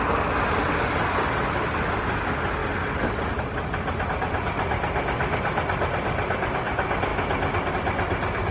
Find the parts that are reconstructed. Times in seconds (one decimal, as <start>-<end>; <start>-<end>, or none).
none